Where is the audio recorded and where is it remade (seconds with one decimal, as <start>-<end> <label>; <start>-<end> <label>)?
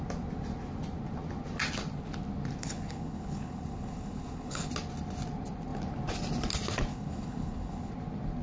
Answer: 0.0-2.6 recorded; 2.6-4.7 remade; 4.7-6.9 recorded; 6.9-7.9 remade; 7.9-8.4 recorded